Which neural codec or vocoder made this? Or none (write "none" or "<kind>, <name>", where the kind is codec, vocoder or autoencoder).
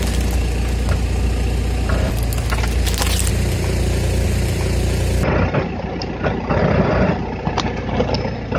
none